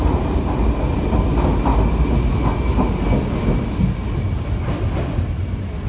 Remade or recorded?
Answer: recorded